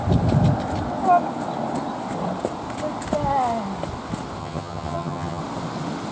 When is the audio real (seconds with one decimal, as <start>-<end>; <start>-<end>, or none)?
0.0-4.4; 5.4-6.1